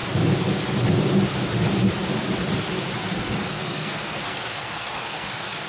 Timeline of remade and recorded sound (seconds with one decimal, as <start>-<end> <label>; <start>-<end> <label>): 0.0-3.1 recorded; 3.1-5.7 remade

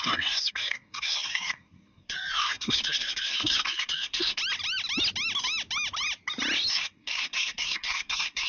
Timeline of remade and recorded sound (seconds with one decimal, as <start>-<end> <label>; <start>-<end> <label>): 0.0-4.4 remade; 4.4-6.7 recorded; 6.7-8.5 remade

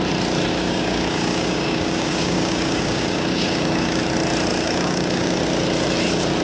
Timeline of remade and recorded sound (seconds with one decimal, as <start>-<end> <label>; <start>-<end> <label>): 0.0-0.5 recorded; 0.5-4.0 remade; 4.0-4.5 recorded; 4.5-5.4 remade; 5.4-6.4 recorded

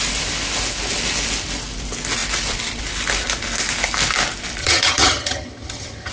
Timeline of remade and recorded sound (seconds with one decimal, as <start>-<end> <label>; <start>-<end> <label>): 0.0-4.6 recorded; 4.6-6.1 remade

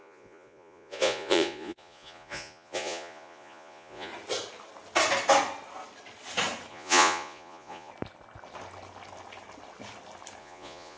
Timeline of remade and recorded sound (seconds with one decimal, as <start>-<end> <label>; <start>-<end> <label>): 0.0-4.1 remade; 4.1-6.7 recorded; 6.7-7.9 remade; 7.9-10.4 recorded; 10.4-11.0 remade

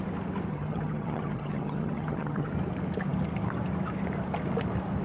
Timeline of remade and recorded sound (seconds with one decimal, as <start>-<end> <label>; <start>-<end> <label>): 0.0-0.5 recorded; 0.5-2.5 remade; 2.5-5.0 recorded